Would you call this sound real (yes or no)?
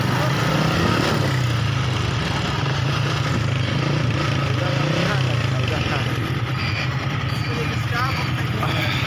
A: yes